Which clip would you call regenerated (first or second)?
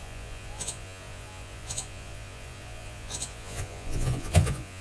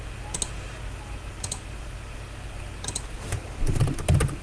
first